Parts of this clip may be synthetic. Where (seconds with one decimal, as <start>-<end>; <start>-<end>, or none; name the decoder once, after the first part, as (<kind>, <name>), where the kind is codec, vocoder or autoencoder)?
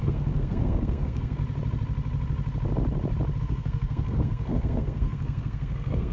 0.0-1.4 (codec, SNAC); 3.4-6.1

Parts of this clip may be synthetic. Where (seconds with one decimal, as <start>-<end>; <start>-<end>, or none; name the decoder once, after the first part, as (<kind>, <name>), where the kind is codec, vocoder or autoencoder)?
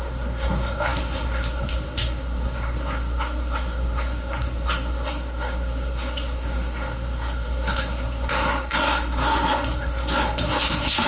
0.0-11.1 (codec, SNAC)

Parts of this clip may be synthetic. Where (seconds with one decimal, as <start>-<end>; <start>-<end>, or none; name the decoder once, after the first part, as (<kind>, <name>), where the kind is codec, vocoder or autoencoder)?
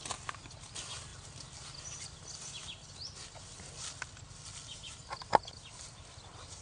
none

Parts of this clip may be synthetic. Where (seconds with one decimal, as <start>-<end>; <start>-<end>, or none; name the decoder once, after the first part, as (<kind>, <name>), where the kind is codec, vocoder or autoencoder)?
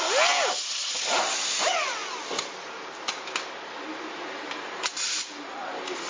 none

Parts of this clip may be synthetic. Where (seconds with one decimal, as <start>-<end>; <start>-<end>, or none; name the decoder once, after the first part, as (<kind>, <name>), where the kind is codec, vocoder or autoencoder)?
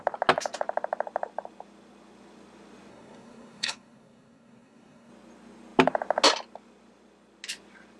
2.9-5.1 (codec, SNAC)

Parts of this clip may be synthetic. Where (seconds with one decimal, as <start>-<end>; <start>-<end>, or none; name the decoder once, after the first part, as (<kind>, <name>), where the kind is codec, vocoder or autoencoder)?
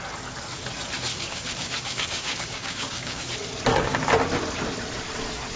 1.1-3.2 (codec, DAC)